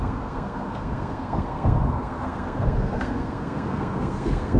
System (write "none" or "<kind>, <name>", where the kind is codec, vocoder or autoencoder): codec, SNAC